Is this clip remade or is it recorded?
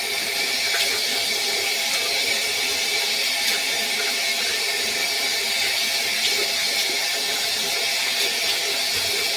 recorded